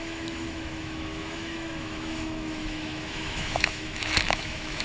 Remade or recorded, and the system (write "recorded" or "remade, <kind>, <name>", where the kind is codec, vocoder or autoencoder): remade, autoencoder, DAC-VAE